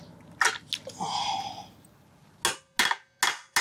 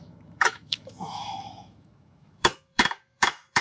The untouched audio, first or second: first